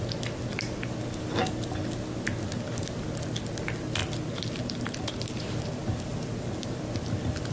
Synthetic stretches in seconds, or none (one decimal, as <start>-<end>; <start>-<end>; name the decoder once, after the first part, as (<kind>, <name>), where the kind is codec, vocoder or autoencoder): none